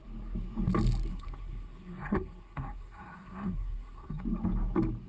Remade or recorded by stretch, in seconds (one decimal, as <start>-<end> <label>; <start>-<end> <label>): 0.0-1.1 recorded; 1.1-4.2 remade; 4.2-5.1 recorded